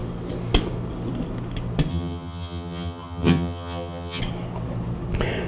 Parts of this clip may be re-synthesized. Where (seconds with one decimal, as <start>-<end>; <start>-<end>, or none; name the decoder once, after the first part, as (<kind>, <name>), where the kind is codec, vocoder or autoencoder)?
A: 1.9-4.2 (vocoder, HiFi-GAN)